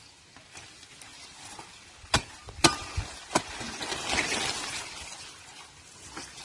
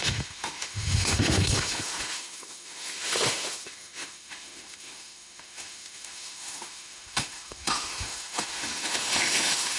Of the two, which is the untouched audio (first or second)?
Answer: first